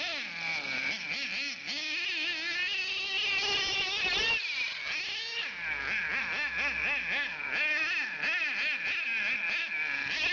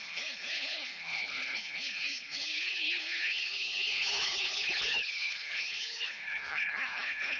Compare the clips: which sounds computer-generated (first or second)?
second